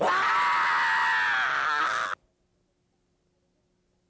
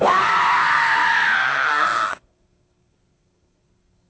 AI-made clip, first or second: second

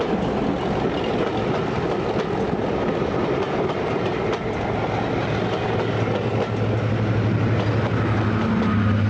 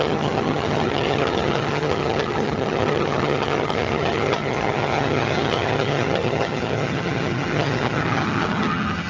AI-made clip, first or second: second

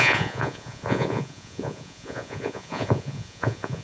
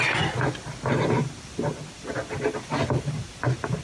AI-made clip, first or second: first